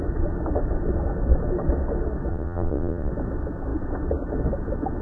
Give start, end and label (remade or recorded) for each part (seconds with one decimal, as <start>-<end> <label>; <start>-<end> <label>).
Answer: 0.0-2.3 recorded; 2.3-3.1 remade; 3.1-5.0 recorded